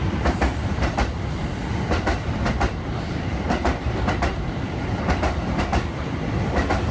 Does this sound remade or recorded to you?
remade